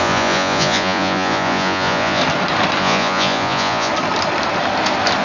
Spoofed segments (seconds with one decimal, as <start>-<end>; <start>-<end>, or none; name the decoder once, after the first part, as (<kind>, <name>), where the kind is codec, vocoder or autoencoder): 0.0-2.2 (vocoder, Vocos); 2.8-3.9

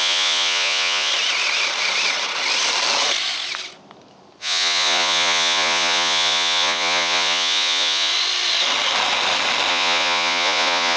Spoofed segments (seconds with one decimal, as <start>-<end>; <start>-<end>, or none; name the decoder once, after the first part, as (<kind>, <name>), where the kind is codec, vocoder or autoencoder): 0.0-1.1 (vocoder, Vocos); 4.4-8.1; 9.7-11.0

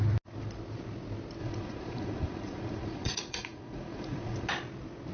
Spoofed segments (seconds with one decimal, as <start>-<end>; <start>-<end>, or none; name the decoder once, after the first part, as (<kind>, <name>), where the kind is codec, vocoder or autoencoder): 1.4-4.5 (vocoder, Vocos)

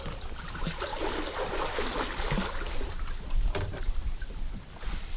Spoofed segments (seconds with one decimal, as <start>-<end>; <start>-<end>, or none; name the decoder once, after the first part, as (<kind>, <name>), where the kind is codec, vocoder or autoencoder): none